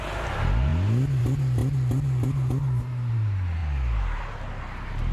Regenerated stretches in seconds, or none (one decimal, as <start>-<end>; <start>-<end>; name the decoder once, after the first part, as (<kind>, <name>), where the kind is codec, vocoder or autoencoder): none